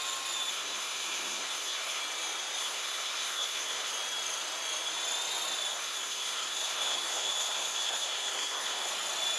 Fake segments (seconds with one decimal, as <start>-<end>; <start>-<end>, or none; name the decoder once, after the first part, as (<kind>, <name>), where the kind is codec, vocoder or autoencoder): 0.5-2.0 (codec, SNAC); 2.6-3.9; 5.7-8.9